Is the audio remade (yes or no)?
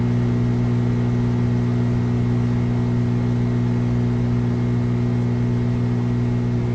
no